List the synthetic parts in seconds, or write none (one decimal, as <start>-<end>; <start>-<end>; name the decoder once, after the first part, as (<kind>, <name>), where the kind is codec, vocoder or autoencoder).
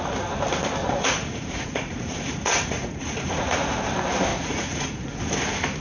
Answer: 0.8-3.8 (vocoder, Vocos); 4.3-5.2